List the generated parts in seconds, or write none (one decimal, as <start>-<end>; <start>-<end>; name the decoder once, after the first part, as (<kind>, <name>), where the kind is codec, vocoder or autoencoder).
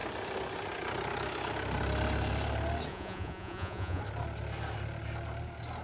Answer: 2.9-4.0 (vocoder, Vocos)